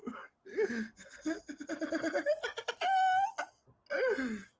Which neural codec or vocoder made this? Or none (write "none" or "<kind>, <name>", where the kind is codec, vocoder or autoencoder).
none